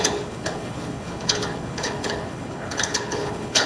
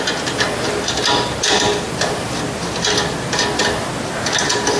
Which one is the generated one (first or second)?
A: first